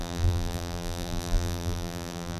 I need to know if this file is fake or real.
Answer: fake